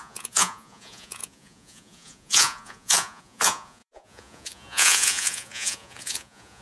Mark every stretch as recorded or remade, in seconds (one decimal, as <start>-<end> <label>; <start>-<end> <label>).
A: 0.0-6.6 remade